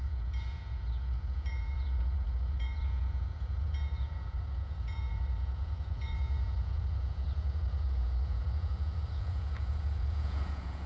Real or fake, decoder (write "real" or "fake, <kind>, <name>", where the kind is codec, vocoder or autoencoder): fake, vocoder, Vocos